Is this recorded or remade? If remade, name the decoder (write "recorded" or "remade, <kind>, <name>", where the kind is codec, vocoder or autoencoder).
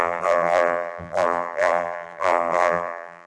remade, vocoder, BigVGAN v2